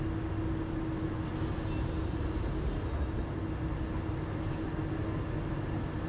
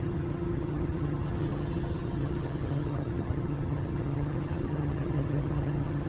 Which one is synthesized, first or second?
second